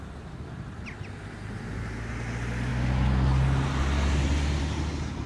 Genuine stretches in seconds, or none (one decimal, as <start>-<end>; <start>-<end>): 0.0-5.3